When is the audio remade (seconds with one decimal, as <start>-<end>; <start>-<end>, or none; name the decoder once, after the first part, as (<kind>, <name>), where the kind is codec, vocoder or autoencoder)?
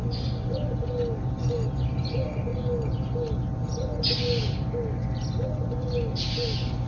none